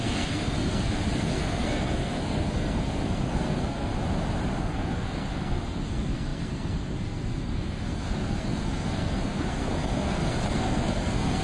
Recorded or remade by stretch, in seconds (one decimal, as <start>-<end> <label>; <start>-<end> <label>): 0.0-3.9 remade; 3.9-4.6 recorded; 4.6-11.4 remade